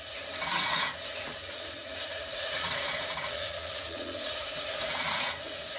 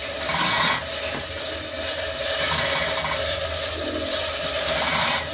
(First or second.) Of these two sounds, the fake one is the first